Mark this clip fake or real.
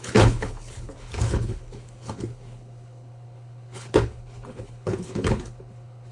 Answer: fake